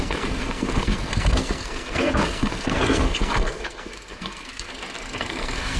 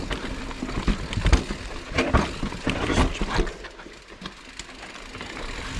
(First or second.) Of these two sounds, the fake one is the first